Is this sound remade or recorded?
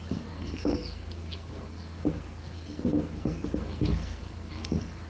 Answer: remade